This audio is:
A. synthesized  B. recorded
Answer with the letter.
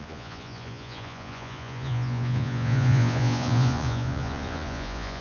A